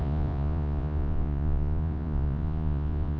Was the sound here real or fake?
fake